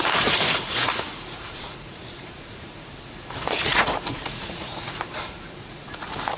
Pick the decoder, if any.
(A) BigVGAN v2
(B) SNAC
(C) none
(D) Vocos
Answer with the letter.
D